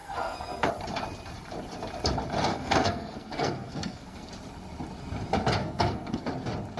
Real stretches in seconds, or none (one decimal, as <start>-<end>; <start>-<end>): 0.7-2.5; 4.3-5.6; 6.3-6.8